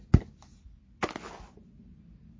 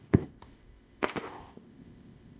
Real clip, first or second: first